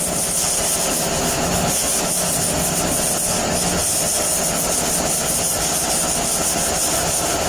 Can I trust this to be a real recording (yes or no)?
yes